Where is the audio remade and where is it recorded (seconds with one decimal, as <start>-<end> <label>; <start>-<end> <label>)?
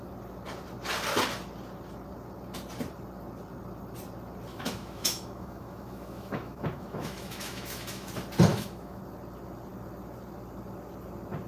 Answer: 0.0-4.5 recorded; 4.5-8.1 remade; 8.1-8.5 recorded; 8.5-9.0 remade; 9.0-11.5 recorded